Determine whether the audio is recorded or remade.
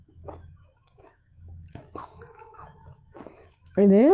remade